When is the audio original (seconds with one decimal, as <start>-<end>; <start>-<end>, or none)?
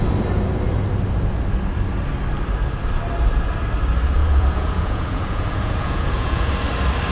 0.0-4.2; 6.5-7.1